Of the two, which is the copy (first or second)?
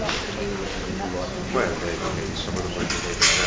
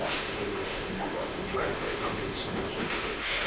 second